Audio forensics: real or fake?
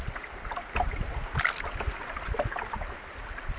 real